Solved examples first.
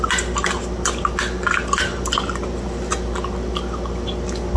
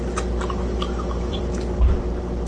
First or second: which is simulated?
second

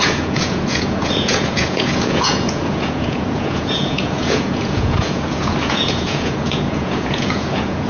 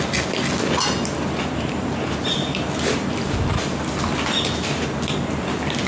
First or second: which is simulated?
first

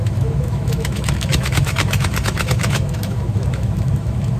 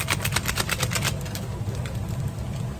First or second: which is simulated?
first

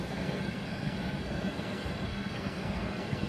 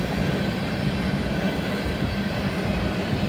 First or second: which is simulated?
first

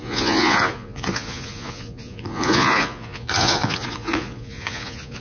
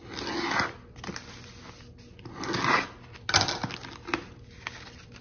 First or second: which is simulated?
first